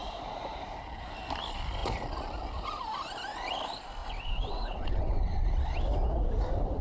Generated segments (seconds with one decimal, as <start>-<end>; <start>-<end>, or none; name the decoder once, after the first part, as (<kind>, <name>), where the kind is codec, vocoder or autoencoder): 4.0-5.4 (vocoder, WaveNeXt)